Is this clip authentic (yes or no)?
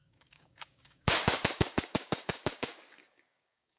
no